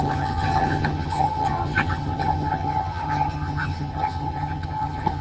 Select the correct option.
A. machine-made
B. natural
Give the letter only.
A